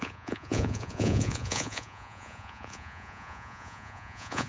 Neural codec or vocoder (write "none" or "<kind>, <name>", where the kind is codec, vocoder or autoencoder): vocoder, Vocos